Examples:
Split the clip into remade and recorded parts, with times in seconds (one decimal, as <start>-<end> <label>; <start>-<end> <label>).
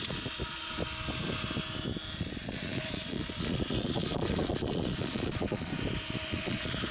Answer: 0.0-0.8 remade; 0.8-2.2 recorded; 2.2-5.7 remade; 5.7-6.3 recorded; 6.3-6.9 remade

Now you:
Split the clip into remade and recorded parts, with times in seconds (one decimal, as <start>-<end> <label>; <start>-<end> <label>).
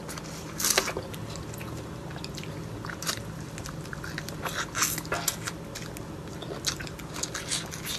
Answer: 0.0-8.0 recorded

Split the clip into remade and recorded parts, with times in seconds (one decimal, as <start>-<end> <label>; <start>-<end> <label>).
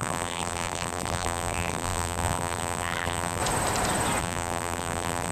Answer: 0.0-3.4 remade; 3.4-4.2 recorded; 4.2-5.3 remade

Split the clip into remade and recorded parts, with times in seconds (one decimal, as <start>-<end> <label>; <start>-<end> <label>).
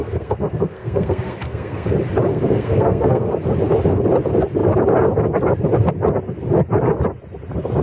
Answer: 0.0-1.9 remade; 1.9-2.3 recorded; 2.3-3.3 remade; 3.3-7.8 recorded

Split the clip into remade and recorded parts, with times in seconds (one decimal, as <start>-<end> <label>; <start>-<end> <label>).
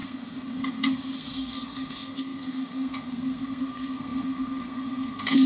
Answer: 0.0-5.5 remade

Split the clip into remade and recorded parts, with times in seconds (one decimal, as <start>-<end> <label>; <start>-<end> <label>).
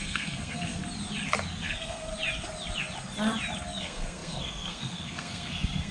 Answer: 0.0-0.8 remade; 0.8-1.6 recorded; 1.6-2.1 remade; 2.1-3.8 recorded; 3.8-5.9 remade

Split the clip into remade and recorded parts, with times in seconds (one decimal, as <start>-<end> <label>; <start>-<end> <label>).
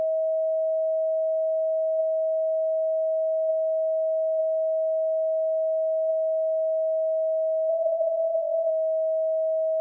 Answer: 0.0-7.7 recorded; 7.7-8.7 remade; 8.7-9.8 recorded